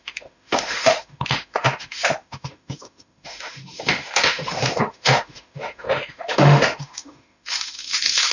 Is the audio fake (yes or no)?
yes